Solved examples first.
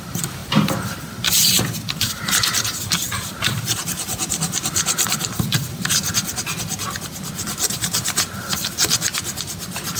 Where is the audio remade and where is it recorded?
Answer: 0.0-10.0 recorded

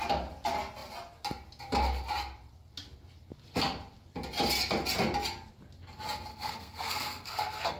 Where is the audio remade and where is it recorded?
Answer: 0.0-6.3 recorded; 6.3-7.8 remade

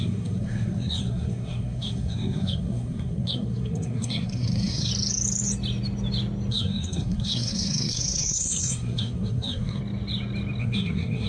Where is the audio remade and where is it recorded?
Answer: 0.0-4.9 remade; 4.9-6.5 recorded; 6.5-9.8 remade; 9.8-10.6 recorded; 10.6-11.3 remade

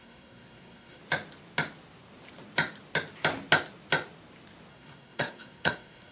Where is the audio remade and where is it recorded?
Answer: 0.0-1.0 remade; 1.0-4.7 recorded; 4.7-6.1 remade

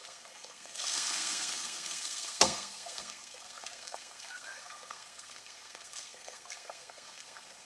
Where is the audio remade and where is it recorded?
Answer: 0.0-7.6 remade

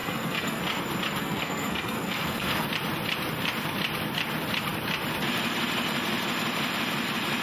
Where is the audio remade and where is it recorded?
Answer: 0.0-0.6 remade; 0.6-1.2 recorded; 1.2-2.7 remade; 2.7-7.4 recorded